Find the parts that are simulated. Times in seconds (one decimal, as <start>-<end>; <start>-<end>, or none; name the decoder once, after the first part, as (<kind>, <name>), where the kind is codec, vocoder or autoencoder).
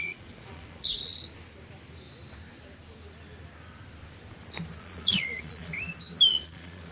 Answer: 0.0-1.1 (vocoder, Vocos); 4.8-5.7; 6.3-6.9